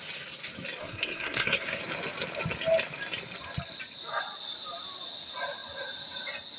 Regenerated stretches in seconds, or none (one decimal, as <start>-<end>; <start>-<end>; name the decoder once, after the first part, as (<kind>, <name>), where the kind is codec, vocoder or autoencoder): 0.8-1.8 (codec, SNAC)